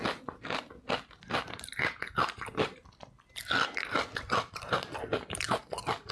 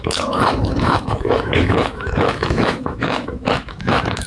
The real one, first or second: first